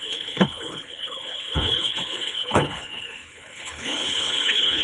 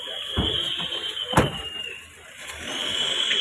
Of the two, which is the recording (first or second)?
second